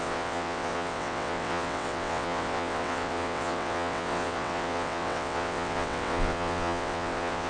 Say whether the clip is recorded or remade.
remade